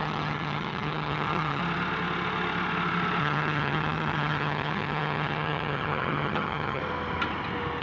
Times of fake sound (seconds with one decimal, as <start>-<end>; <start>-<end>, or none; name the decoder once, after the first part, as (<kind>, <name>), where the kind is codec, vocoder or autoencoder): 0.0-1.6 (vocoder, HiFi-GAN); 3.2-6.8